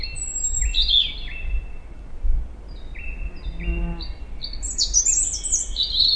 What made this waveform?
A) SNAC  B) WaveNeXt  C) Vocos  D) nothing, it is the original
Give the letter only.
D